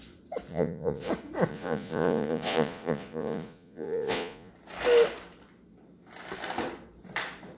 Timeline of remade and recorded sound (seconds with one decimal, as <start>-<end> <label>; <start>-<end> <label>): 0.0-0.5 recorded; 0.5-1.1 remade; 1.1-1.5 recorded; 1.5-4.5 remade; 4.5-7.6 recorded